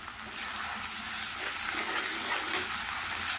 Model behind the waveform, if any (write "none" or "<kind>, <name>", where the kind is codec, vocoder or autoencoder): none